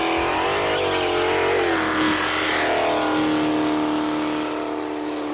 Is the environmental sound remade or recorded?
recorded